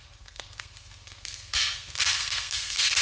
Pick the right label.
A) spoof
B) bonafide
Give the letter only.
A